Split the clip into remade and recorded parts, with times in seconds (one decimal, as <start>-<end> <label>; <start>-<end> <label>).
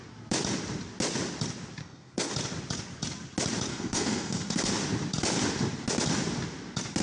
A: 0.0-1.8 recorded; 1.8-2.3 remade; 2.3-3.7 recorded; 3.7-4.7 remade; 4.7-7.0 recorded